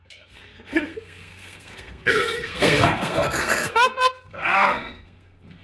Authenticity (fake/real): fake